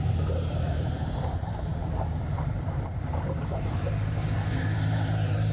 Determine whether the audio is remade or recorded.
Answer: remade